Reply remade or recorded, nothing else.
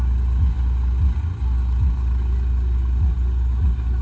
recorded